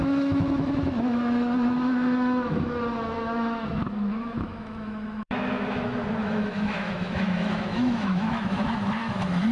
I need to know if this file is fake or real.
fake